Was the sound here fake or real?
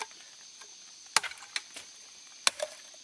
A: real